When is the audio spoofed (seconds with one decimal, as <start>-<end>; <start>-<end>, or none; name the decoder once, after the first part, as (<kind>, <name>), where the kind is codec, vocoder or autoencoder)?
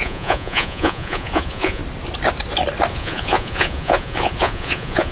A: 0.0-1.8 (vocoder, Vocos); 2.9-5.1